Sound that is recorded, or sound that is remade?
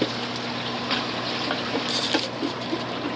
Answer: recorded